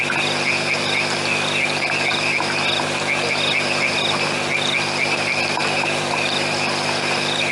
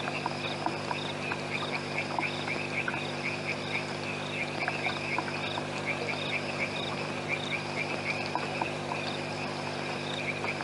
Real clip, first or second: first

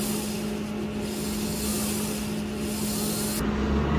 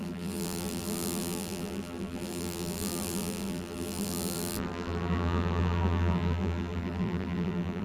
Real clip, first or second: first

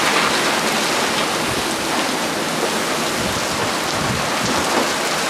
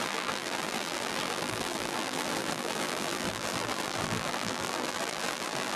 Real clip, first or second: first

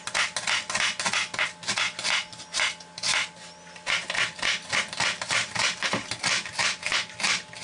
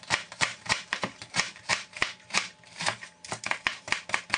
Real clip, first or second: first